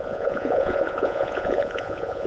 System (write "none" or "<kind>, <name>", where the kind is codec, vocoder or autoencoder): vocoder, Vocos